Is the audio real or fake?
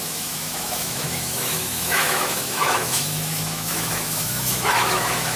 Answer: fake